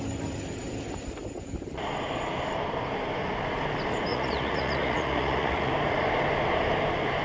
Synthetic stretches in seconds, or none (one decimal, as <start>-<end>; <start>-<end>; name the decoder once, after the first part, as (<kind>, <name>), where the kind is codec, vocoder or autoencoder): 4.1-5.7 (vocoder, Vocos)